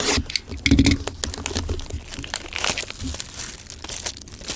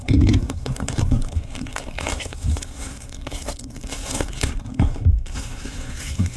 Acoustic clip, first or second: first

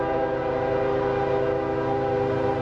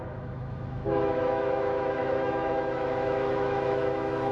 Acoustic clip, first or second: first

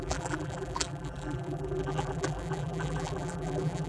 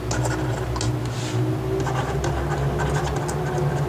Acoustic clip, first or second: second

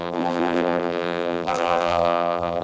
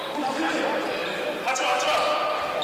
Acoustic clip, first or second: second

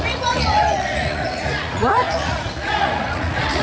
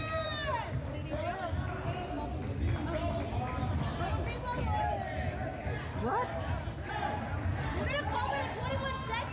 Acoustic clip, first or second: second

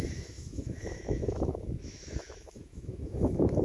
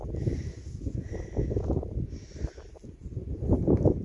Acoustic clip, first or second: second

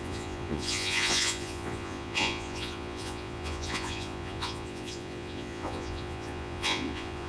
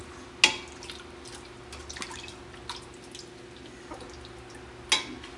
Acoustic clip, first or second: second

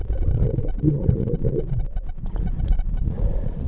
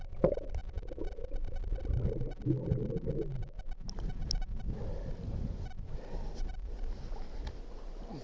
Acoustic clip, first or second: second